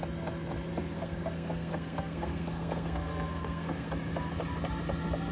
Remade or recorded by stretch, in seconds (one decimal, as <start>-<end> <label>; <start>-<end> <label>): 0.0-0.7 recorded; 0.7-3.9 remade; 3.9-5.3 recorded

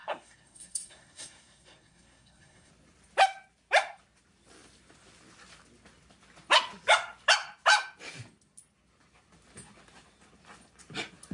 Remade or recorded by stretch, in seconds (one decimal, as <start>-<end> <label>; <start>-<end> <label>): 0.0-2.7 remade; 2.7-11.3 recorded

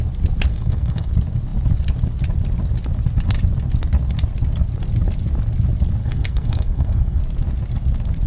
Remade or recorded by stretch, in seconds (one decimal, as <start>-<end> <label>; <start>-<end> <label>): 0.0-0.5 recorded; 0.5-1.1 remade; 1.1-6.0 recorded; 6.0-7.2 remade; 7.2-8.3 recorded

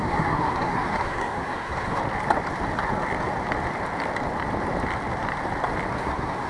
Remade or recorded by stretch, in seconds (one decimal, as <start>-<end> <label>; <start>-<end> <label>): 0.0-2.0 remade; 2.0-5.9 recorded; 5.9-6.5 remade

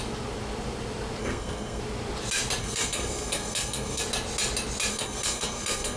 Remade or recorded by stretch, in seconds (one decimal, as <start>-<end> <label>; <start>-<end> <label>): 0.0-1.2 recorded; 1.2-1.8 remade; 1.8-2.6 recorded; 2.6-4.0 remade; 4.0-4.9 recorded; 4.9-6.0 remade

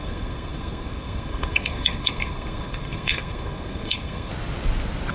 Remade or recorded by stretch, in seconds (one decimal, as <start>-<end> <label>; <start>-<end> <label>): 0.0-4.3 remade; 4.3-5.1 recorded

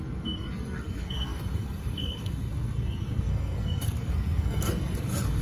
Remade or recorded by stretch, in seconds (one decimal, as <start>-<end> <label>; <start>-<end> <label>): 0.0-5.4 remade

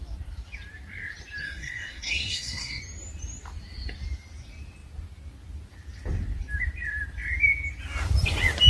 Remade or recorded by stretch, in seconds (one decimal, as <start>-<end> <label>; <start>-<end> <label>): 0.0-1.4 recorded; 1.4-2.8 remade; 2.8-8.7 recorded